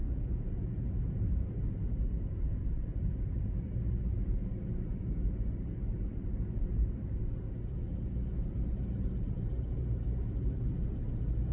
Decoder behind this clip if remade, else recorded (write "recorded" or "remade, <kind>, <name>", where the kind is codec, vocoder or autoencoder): remade, vocoder, BigVGAN v2